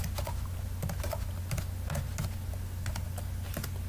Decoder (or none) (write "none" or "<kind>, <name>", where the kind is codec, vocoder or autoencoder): none